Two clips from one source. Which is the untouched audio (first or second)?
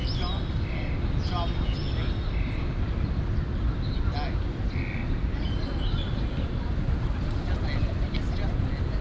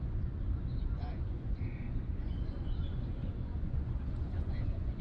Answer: first